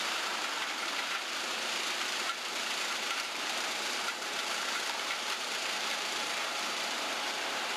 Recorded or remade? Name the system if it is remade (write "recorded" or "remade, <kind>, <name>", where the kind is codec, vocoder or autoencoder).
remade, vocoder, BigVGAN v2